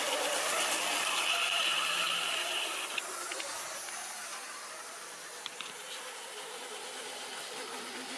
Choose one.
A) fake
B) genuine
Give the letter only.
B